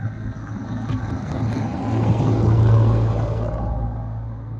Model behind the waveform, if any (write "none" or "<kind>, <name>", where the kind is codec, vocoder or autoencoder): codec, SNAC